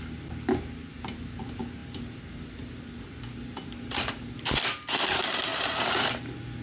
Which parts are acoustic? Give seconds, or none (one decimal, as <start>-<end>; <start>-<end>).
0.0-6.6